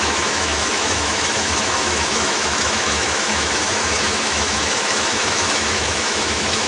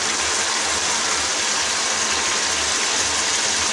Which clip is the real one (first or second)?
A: second